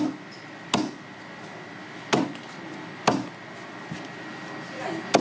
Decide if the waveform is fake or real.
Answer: real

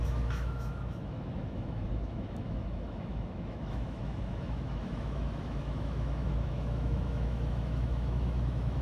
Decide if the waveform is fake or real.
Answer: fake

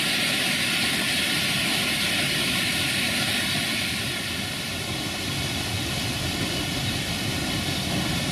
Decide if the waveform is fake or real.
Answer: real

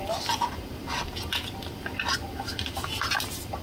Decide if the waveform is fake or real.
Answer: real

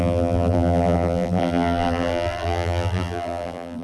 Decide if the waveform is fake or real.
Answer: fake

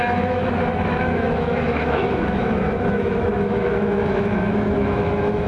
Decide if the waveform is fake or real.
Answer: fake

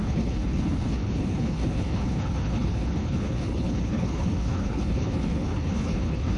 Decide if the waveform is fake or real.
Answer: fake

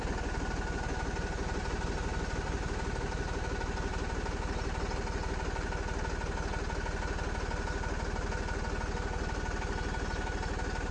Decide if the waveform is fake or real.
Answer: real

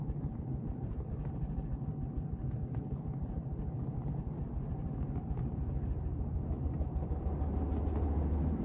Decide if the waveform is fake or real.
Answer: real